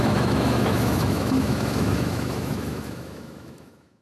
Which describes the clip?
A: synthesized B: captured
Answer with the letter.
A